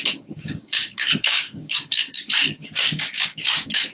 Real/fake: fake